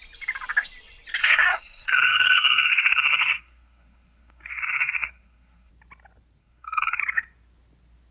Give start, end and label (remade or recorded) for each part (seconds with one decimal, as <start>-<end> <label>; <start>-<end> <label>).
0.0-1.2 recorded; 1.2-5.7 remade; 5.7-6.4 recorded; 6.4-7.0 remade; 7.0-8.1 recorded

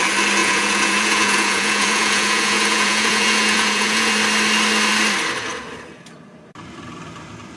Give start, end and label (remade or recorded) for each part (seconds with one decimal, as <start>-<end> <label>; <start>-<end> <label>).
0.0-0.4 recorded; 0.4-4.1 remade; 4.1-7.6 recorded

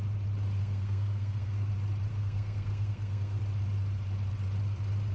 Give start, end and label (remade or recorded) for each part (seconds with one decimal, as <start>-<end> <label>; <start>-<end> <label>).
0.0-0.6 recorded; 0.6-1.7 remade; 1.7-2.1 recorded; 2.1-3.4 remade; 3.4-5.1 recorded

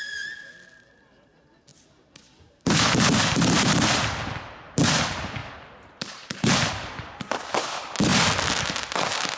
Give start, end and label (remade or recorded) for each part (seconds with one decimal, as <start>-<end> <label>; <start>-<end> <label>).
0.0-1.7 remade; 1.7-3.3 recorded; 3.3-8.1 remade; 8.1-9.4 recorded

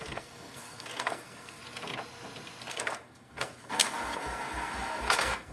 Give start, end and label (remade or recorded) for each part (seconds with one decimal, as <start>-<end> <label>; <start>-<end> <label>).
0.0-1.6 remade; 1.6-2.7 recorded; 2.7-5.5 remade

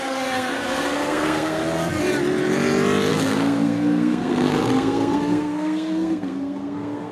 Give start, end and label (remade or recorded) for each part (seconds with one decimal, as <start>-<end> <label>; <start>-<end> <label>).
0.0-1.6 remade; 1.6-3.1 recorded; 3.1-7.1 remade

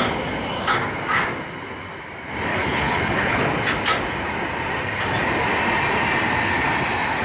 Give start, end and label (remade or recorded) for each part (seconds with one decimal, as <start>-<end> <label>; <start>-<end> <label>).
0.0-2.5 recorded; 2.5-3.4 remade; 3.4-7.2 recorded

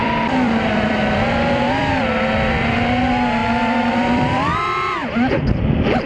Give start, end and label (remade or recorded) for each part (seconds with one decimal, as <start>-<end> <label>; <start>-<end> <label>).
0.0-2.1 remade; 2.1-3.4 recorded; 3.4-4.6 remade; 4.6-6.1 recorded